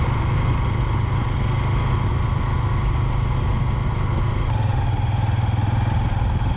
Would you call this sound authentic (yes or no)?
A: yes